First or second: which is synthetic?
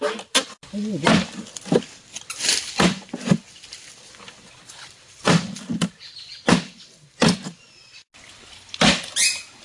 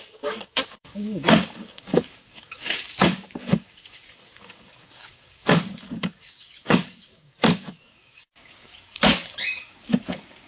second